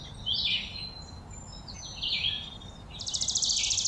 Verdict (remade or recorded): recorded